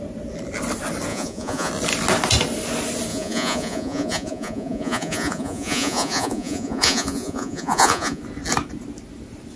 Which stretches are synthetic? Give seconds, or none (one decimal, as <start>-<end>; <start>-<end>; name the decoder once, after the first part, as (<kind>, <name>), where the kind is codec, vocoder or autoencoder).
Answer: 1.1-1.7 (vocoder, Vocos); 3.1-8.2